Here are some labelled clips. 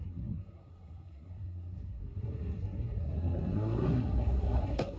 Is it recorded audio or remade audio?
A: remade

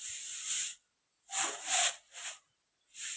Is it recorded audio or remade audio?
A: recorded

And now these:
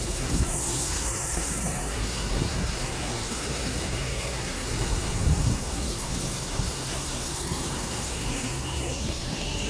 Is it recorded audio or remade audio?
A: remade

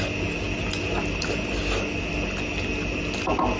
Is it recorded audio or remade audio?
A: recorded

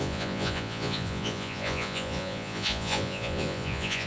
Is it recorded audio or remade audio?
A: remade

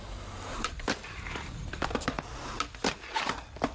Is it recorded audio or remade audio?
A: recorded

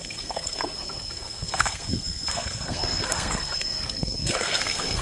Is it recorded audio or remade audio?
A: remade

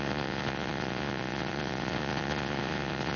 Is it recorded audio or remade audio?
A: remade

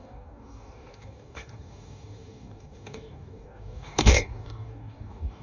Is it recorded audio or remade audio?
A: remade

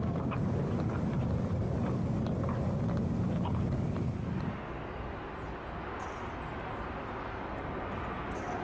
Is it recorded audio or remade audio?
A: recorded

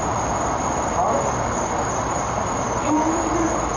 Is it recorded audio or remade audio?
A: recorded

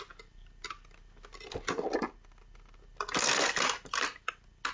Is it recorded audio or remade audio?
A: recorded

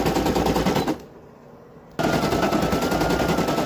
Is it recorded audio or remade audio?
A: recorded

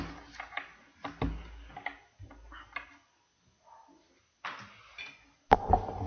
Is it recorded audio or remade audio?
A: recorded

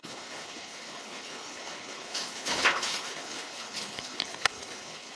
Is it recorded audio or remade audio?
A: remade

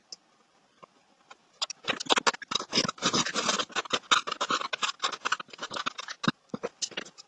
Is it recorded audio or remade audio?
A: recorded